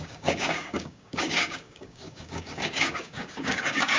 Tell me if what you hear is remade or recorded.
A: remade